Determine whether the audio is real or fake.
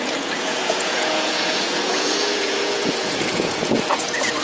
fake